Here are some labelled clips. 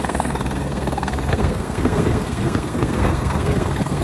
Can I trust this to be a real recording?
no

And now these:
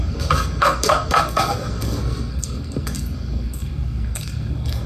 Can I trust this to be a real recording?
no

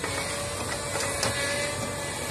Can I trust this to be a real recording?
yes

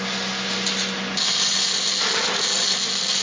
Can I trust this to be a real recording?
yes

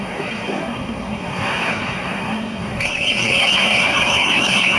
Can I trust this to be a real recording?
no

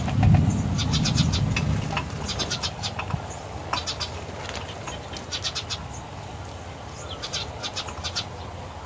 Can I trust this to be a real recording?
yes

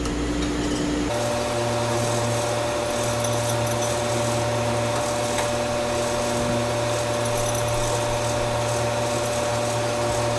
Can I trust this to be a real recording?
yes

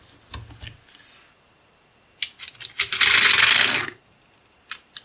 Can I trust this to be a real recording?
yes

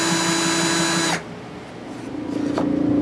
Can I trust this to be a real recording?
yes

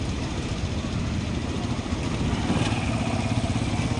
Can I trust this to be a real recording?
yes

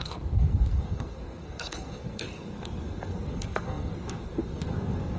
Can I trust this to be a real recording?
no